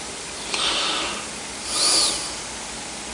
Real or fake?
real